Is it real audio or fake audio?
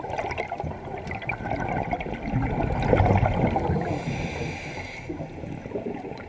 real